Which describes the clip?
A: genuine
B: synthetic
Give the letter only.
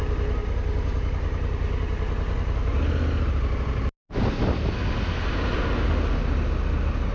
A